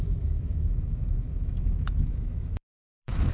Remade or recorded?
remade